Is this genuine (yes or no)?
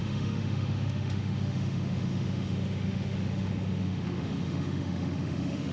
no